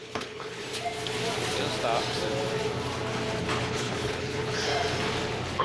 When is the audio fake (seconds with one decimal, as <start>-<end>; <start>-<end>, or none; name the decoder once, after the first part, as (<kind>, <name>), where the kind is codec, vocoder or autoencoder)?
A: 0.0-0.6 (codec, HILCodec); 3.4-4.7